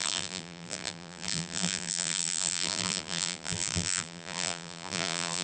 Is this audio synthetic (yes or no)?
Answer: yes